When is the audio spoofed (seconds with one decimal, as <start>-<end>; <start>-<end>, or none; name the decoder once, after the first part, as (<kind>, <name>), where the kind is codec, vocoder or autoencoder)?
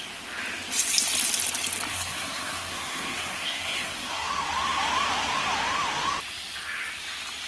1.9-4.3 (codec, SNAC)